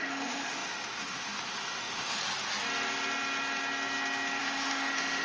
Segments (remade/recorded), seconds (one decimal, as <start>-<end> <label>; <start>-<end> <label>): 0.0-2.2 remade; 2.2-4.4 recorded; 4.4-5.2 remade